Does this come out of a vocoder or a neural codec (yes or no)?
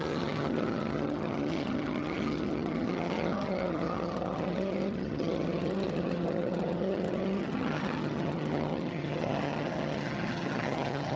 yes